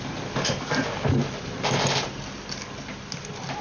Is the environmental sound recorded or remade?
recorded